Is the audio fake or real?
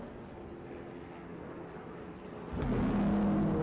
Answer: real